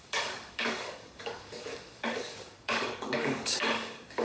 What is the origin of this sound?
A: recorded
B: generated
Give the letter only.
B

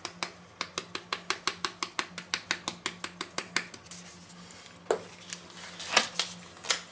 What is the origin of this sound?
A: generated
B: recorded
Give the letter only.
B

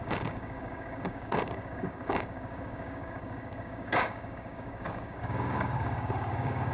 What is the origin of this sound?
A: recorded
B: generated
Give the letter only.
B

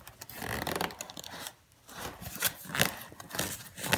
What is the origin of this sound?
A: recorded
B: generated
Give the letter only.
A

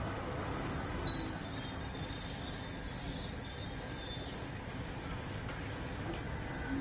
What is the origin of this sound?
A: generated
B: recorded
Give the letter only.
B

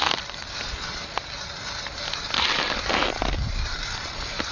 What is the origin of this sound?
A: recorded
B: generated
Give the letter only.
A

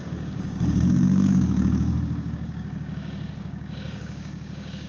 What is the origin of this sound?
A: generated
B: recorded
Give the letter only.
A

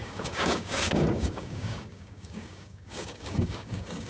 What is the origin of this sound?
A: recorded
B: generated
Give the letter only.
B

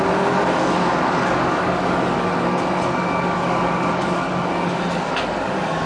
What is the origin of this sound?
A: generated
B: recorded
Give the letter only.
A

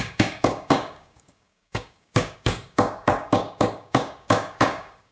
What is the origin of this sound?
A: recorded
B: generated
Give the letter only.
B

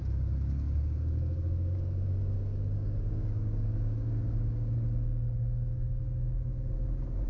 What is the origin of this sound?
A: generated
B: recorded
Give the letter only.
A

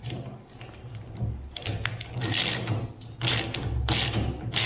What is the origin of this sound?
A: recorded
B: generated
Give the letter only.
A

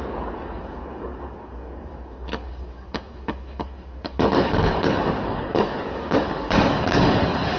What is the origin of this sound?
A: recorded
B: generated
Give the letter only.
B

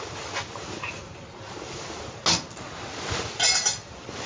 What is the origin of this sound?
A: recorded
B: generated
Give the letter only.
A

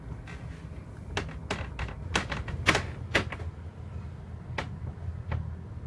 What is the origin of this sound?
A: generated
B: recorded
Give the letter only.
B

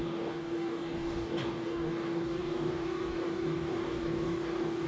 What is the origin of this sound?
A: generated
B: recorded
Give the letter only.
A